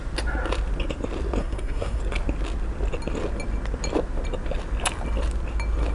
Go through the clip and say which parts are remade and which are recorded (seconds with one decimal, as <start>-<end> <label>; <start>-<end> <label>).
0.0-1.4 recorded; 1.4-2.0 remade; 2.0-5.9 recorded